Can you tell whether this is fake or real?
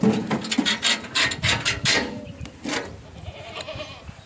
real